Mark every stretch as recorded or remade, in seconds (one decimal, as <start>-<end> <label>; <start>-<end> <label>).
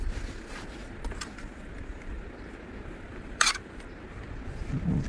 0.0-3.1 recorded; 3.1-3.6 remade; 3.6-5.1 recorded